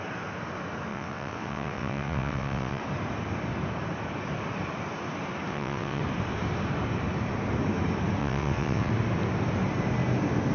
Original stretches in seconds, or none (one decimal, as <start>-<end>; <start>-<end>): 0.0-0.9; 2.8-5.5; 6.0-8.2; 8.9-10.5